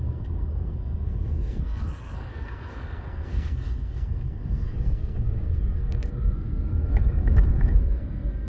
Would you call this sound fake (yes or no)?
yes